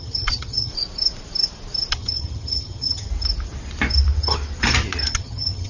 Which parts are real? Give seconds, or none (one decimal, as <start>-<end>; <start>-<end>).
0.7-1.9; 3.1-5.1